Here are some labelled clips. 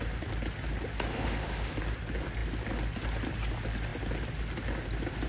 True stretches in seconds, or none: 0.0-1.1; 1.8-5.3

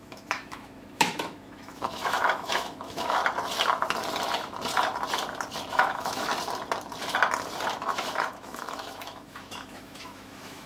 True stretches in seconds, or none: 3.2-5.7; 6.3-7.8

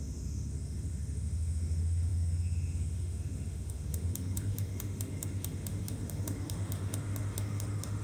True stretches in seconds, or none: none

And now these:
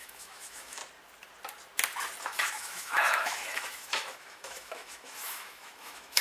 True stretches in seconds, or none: 0.8-2.2